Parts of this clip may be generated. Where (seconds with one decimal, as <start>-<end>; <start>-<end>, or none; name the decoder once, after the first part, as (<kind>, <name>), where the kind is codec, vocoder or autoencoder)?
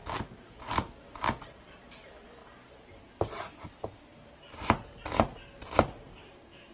6.1-6.7 (codec, DAC)